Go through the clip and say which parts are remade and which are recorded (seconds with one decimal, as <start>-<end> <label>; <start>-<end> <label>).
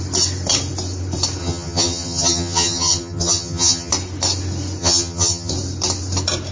0.0-1.4 recorded; 1.4-3.9 remade; 3.9-4.8 recorded; 4.8-5.5 remade; 5.5-6.5 recorded